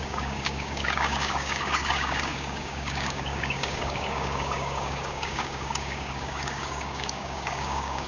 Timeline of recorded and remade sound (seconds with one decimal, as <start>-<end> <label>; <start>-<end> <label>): 0.0-8.1 remade